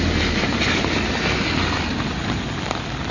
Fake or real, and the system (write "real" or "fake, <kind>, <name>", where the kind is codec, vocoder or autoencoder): real